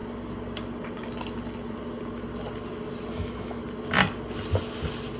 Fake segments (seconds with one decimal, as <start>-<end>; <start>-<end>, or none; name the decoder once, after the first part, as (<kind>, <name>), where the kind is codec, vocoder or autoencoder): 3.1-3.6 (autoencoder, DAC-VAE)